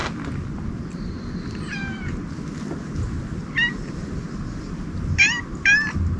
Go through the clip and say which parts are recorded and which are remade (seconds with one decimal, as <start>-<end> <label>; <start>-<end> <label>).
0.0-6.2 recorded